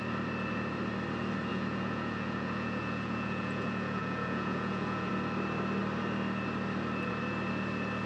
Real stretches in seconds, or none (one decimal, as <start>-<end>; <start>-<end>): 0.0-1.5; 5.1-8.1